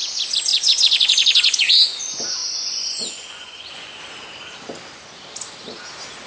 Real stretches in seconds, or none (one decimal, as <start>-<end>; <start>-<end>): 0.0-0.5; 2.0-2.4; 4.0-6.3